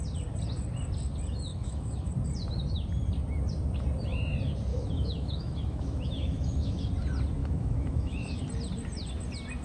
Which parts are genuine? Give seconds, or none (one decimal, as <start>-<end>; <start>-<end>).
0.0-1.5; 2.1-4.7; 6.9-7.4; 8.4-9.6